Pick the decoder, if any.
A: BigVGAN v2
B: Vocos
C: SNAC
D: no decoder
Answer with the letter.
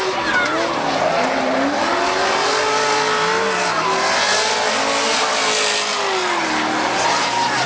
D